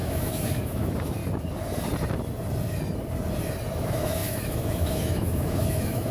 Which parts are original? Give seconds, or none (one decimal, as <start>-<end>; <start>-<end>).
1.2-3.8